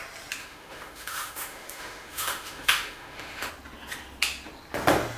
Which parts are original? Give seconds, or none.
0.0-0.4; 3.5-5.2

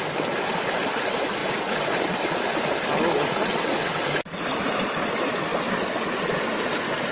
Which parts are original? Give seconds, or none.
0.0-7.1

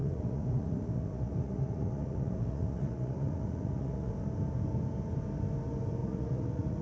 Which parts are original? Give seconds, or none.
4.1-6.0